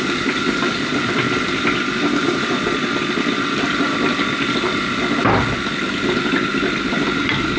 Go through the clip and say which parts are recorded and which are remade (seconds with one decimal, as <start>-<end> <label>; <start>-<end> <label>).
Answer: 0.0-2.2 recorded; 2.2-5.8 remade; 5.8-7.6 recorded